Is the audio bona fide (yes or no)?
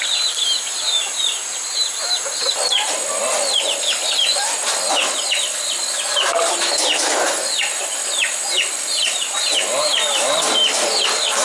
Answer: yes